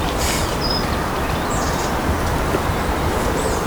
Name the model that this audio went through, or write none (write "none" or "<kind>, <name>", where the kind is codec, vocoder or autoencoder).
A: none